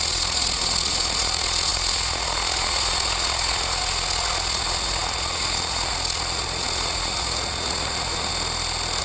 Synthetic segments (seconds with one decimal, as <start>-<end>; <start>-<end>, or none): 0.0-8.3